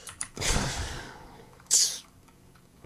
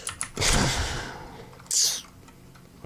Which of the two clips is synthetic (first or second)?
first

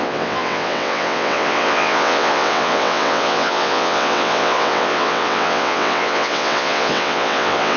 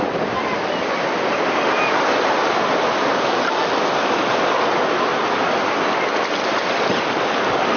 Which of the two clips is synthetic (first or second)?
first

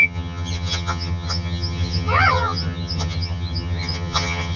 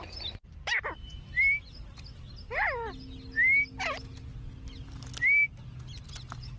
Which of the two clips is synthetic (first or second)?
first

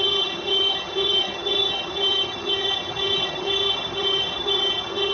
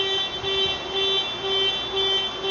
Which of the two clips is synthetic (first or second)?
first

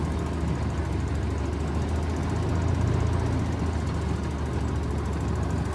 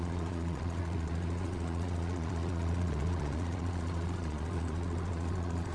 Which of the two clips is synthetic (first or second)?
second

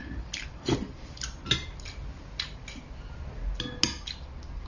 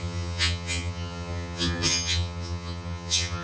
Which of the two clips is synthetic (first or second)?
second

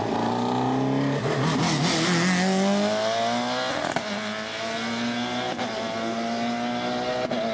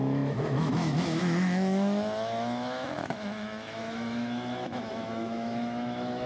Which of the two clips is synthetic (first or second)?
second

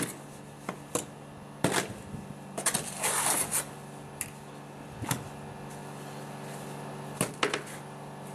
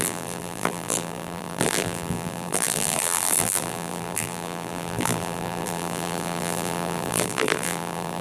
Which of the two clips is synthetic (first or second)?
second